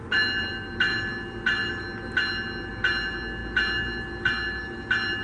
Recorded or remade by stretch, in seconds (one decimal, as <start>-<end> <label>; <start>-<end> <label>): 0.0-5.2 recorded

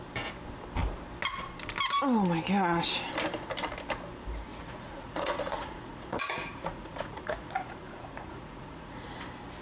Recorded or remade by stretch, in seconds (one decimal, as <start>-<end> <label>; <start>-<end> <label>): 0.0-4.5 recorded; 4.5-9.2 remade; 9.2-9.6 recorded

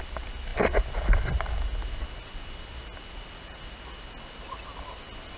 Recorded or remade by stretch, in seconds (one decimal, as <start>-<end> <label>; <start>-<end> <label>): 0.0-5.4 recorded

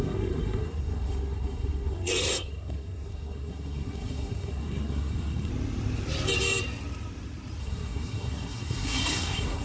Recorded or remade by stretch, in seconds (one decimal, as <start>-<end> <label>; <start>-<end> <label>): 0.0-5.5 remade; 5.5-7.6 recorded; 7.6-9.6 remade

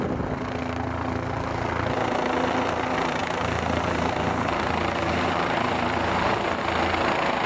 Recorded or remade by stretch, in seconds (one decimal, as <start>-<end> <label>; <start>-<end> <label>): 0.0-3.2 recorded; 3.2-6.6 remade; 6.6-7.5 recorded

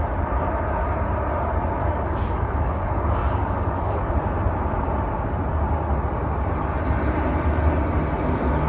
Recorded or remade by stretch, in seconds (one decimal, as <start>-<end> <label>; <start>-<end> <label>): 0.0-1.8 recorded; 1.8-4.1 remade; 4.1-8.7 recorded